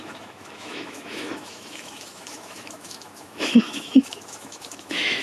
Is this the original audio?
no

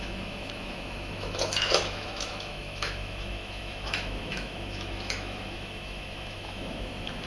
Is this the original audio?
no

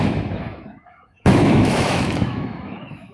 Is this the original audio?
no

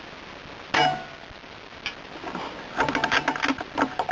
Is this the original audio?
yes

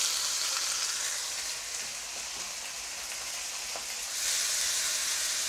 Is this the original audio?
yes